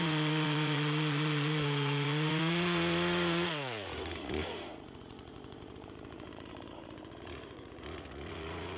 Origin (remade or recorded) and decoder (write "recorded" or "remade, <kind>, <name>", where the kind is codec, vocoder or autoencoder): remade, vocoder, Vocos